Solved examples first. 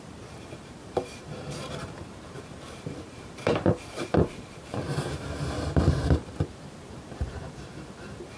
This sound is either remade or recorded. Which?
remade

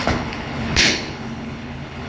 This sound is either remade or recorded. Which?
remade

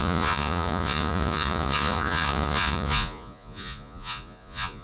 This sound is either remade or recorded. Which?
remade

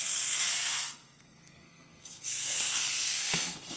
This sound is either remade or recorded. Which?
remade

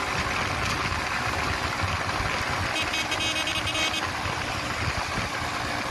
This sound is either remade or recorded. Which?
recorded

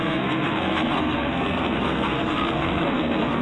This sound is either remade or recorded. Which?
remade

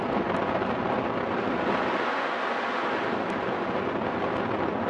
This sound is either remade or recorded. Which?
recorded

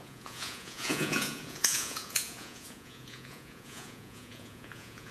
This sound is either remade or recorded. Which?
remade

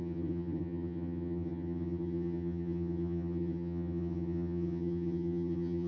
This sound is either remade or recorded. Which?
remade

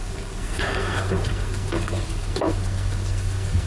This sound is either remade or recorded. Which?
remade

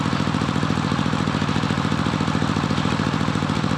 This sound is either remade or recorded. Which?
remade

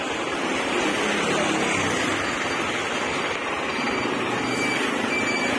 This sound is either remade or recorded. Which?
recorded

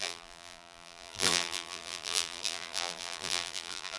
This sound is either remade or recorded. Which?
remade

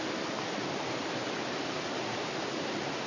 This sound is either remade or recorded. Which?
recorded